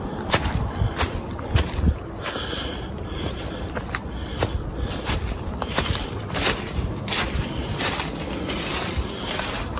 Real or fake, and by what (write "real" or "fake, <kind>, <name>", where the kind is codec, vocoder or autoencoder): fake, vocoder, BigVGAN v2